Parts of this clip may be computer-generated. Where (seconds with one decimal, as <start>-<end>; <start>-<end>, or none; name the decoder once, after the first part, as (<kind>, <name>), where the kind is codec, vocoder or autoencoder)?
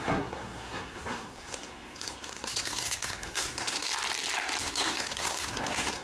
0.0-3.9 (codec, SNAC); 4.6-6.0